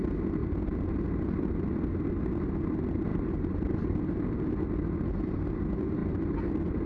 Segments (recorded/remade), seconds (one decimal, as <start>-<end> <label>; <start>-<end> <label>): 0.0-3.1 recorded; 3.1-4.5 remade; 4.5-6.9 recorded